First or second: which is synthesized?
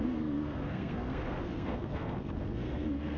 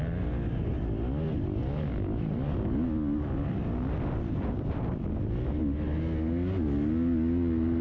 first